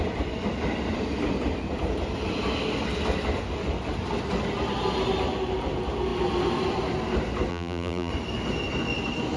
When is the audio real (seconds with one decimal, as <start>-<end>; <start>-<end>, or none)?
0.0-7.5; 8.1-9.4